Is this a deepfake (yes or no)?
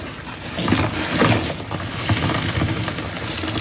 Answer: no